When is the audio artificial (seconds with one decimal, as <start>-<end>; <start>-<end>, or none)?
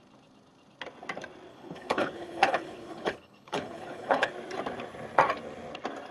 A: 1.5-4.3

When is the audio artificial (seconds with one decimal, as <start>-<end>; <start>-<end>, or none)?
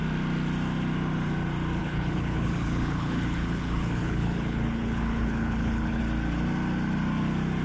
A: 1.8-6.0